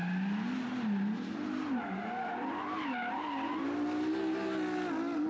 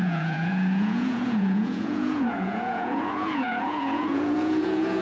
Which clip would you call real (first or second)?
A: first